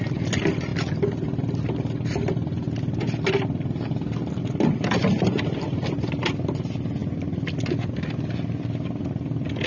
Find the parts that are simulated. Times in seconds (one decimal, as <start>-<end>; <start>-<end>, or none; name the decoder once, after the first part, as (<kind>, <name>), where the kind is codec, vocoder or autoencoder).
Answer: none